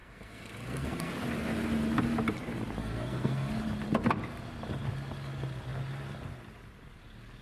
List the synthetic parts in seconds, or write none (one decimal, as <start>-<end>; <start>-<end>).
0.0-1.1; 2.8-3.5